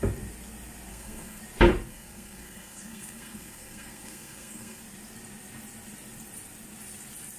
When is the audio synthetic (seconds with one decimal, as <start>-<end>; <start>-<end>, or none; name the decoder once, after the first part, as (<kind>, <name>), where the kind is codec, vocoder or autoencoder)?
0.9-1.4 (codec, SNAC); 1.9-4.8